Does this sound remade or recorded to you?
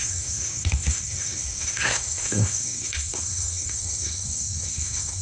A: remade